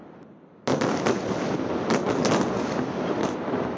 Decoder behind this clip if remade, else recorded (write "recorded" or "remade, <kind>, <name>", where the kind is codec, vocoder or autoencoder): recorded